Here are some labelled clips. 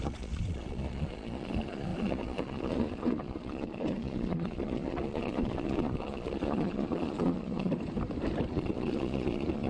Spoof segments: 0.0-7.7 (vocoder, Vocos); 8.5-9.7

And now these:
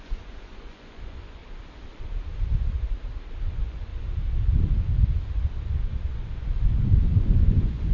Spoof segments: 0.0-1.4 (vocoder, Vocos); 3.4-3.9; 6.1-7.9

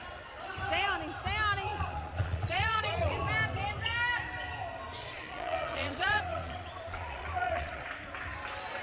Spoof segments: 1.7-3.3 (vocoder, Vocos); 5.0-7.9

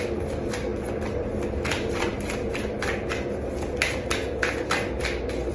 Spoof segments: 0.0-0.7 (vocoder, BigVGAN v2); 1.4-2.1

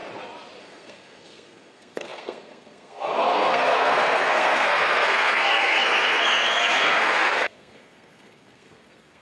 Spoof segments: 0.6-9.2 (codec, SNAC)

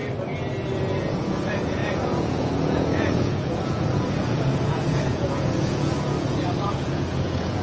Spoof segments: 1.0-7.6 (vocoder, Vocos)

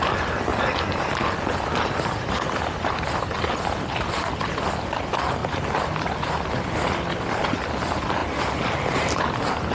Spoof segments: 5.4-6.3 (vocoder, BigVGAN v2); 8.2-9.2